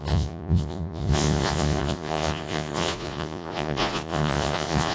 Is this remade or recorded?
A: remade